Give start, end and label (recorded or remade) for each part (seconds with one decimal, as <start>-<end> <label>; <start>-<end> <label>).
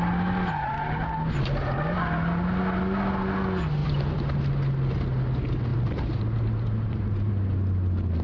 0.0-3.8 recorded; 3.8-4.4 remade; 4.4-5.7 recorded; 5.7-7.3 remade; 7.3-8.2 recorded